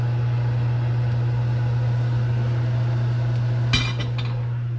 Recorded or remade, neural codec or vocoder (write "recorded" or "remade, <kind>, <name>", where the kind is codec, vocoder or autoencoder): recorded